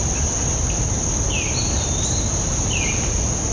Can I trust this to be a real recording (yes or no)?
yes